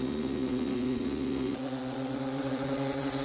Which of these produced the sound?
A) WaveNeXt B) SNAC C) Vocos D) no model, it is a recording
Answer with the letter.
C